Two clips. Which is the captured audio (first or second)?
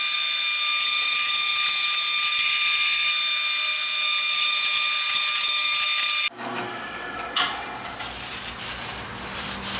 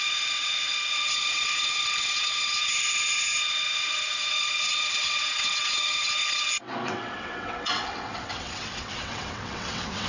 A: first